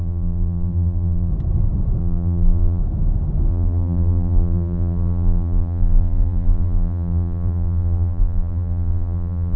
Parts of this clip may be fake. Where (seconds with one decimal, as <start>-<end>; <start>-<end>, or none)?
0.0-1.3; 2.0-2.8; 3.5-9.6